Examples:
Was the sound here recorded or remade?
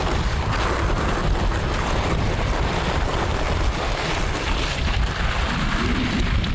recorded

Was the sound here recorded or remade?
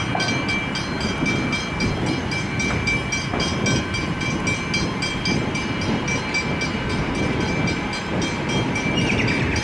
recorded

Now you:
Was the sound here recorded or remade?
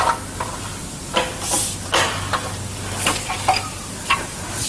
recorded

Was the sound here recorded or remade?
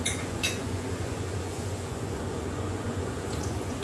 remade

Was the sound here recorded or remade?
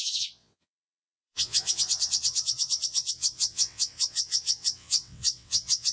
remade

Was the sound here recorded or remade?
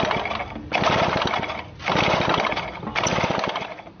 recorded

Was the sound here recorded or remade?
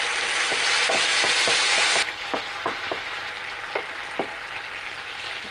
recorded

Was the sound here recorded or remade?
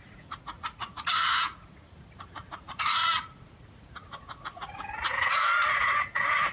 remade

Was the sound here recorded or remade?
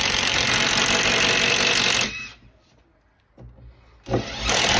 recorded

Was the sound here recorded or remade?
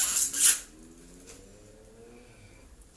recorded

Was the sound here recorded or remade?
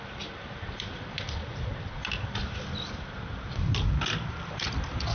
recorded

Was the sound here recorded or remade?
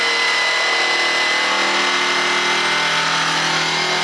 recorded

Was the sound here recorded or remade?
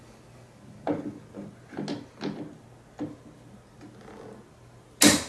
recorded